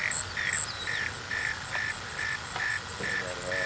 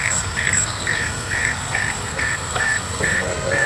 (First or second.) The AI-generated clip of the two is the second